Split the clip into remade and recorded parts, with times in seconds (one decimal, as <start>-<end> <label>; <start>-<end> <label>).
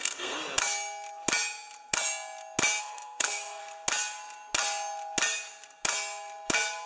0.0-0.4 remade; 0.4-2.8 recorded; 2.8-3.6 remade; 3.6-6.9 recorded